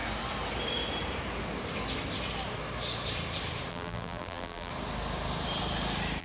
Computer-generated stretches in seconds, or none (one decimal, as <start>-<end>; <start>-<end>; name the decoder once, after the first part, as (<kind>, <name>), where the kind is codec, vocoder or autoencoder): 3.7-4.7 (vocoder, BigVGAN v2)